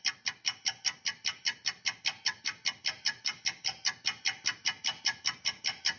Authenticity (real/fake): real